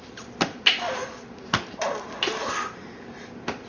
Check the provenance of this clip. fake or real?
real